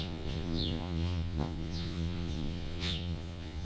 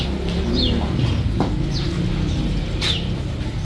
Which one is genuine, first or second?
second